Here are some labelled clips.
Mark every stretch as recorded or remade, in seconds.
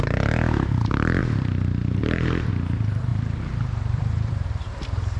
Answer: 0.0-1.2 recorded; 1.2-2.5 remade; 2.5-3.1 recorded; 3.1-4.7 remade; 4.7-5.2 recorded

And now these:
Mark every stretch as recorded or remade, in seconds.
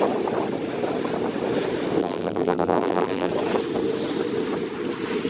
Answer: 0.0-2.0 recorded; 2.0-3.3 remade; 3.3-5.3 recorded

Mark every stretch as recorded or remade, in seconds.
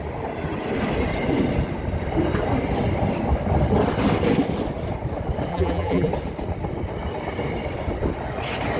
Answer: 0.0-5.5 recorded; 5.5-6.1 remade; 6.1-8.8 recorded